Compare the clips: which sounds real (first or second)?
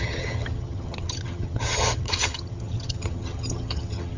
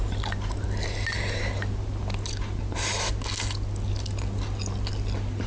second